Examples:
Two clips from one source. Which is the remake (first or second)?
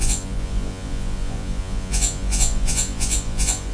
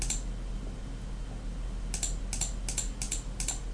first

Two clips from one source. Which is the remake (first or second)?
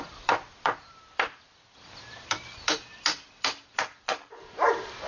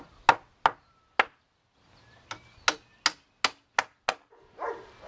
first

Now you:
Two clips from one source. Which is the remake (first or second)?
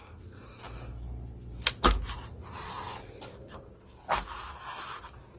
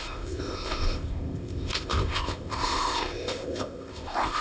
second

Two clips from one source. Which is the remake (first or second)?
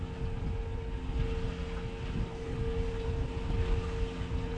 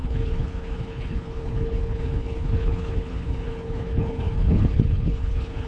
second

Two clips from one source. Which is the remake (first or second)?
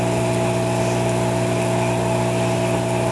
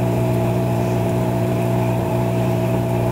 second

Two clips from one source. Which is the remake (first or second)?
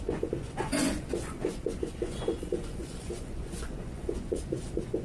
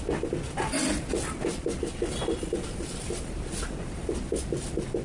first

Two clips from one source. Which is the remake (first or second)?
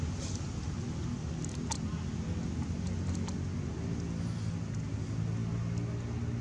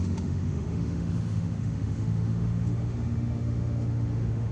second